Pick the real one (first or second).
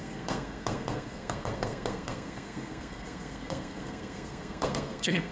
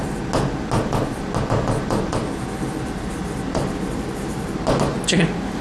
second